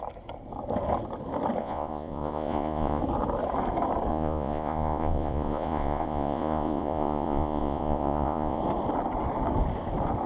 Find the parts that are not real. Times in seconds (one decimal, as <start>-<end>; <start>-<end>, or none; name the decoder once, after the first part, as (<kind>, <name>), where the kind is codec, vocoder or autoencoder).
1.6-3.0 (vocoder, Vocos); 4.1-8.6